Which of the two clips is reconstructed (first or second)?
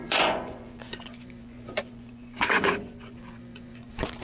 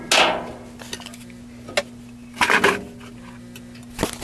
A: first